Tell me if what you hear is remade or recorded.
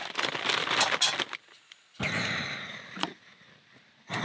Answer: recorded